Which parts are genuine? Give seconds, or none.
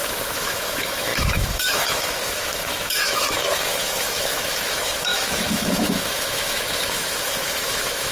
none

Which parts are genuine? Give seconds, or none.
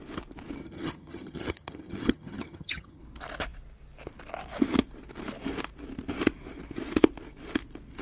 0.0-0.6; 3.0-8.0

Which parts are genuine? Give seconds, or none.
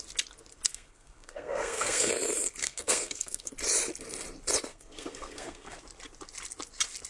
0.0-0.7; 2.1-2.6; 3.5-4.7; 5.8-7.1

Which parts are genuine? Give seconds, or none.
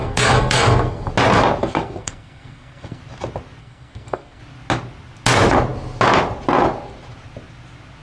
1.1-1.6; 3.0-3.6; 4.4-8.0